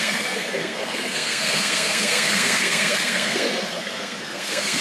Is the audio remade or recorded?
remade